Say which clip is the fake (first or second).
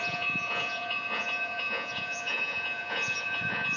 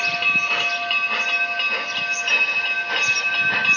first